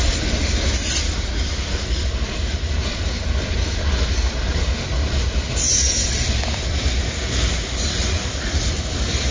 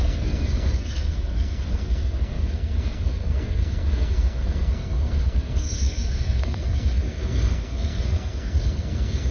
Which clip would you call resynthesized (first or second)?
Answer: second